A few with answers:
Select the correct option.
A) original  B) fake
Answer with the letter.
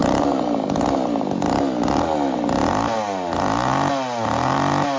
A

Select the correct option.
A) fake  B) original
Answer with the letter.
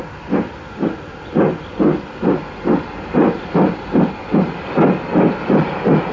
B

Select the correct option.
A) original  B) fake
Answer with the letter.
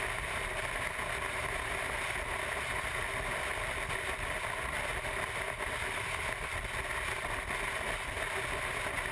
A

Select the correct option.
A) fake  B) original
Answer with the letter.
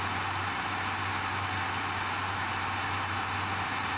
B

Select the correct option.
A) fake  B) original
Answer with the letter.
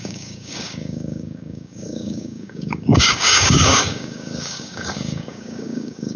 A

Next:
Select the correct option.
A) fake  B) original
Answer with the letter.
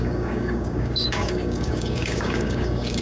A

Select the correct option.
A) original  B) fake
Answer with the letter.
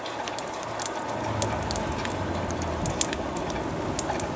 A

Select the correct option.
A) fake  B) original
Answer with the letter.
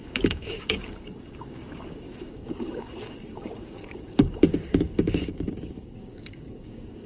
A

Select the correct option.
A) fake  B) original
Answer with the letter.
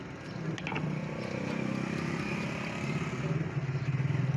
B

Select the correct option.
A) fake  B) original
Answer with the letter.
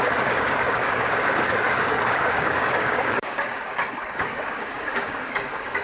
A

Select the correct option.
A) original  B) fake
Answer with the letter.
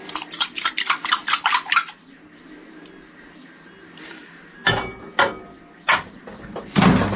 A